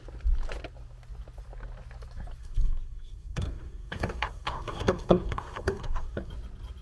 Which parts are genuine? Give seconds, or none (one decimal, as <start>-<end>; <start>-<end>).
0.0-2.4; 6.3-6.8